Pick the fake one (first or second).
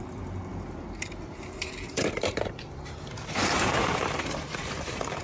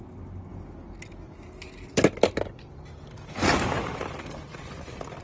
first